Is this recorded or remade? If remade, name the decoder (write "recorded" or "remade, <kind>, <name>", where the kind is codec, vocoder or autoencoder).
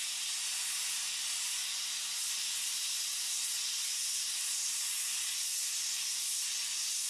recorded